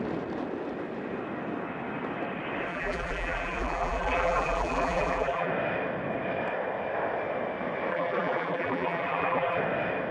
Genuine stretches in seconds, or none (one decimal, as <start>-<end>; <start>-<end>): 0.0-2.7; 5.5-7.9; 9.6-10.1